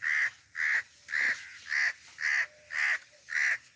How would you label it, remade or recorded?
recorded